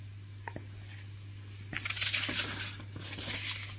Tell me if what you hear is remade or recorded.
recorded